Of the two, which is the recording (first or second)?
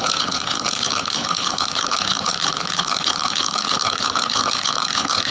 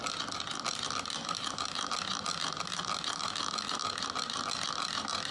second